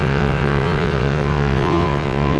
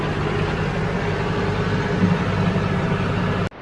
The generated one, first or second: first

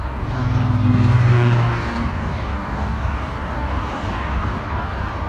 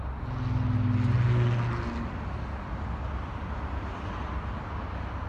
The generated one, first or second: first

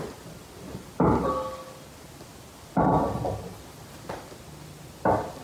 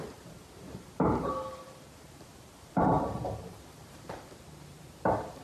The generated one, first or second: second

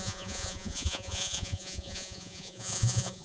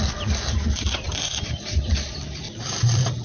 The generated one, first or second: first